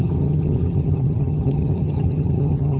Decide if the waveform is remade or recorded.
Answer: remade